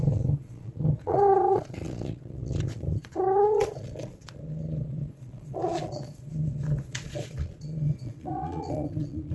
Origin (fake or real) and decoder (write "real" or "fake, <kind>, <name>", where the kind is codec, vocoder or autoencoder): fake, vocoder, Vocos